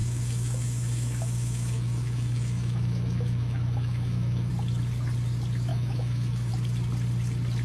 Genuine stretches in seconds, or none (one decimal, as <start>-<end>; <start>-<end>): 4.5-5.7; 6.5-7.6